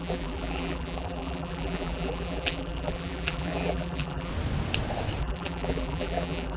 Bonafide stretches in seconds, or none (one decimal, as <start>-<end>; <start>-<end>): 4.3-5.2

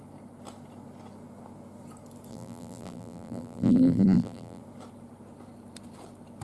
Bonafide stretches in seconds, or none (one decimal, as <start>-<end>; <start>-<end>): 0.0-2.3; 4.6-6.4

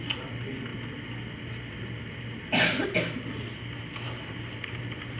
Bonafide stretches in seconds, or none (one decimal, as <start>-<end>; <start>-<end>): 0.0-5.2

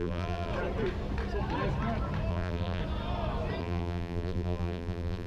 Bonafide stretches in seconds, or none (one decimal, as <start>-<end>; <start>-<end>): 0.5-2.3; 2.8-3.6

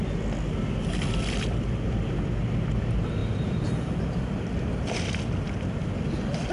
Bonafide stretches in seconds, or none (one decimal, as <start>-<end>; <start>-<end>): 0.0-3.2; 4.0-6.5

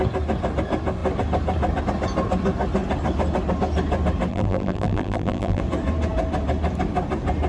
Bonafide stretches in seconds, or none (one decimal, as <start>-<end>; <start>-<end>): 0.0-4.3; 5.6-7.5

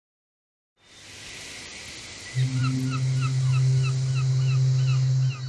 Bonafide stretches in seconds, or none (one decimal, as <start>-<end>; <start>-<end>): 0.0-5.5

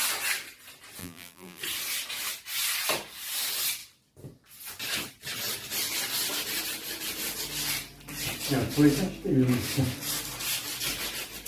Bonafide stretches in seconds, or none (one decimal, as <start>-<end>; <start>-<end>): 0.0-1.0; 1.6-11.5